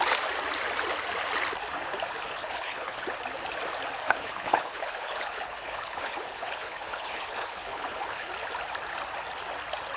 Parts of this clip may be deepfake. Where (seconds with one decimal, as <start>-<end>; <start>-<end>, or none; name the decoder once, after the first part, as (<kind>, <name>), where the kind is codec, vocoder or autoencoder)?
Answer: 2.3-3.0 (codec, HILCodec); 4.0-8.3